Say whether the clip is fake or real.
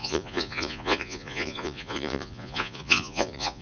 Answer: fake